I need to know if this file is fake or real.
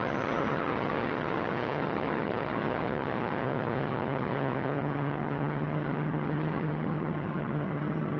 fake